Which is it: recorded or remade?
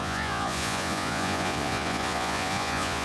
remade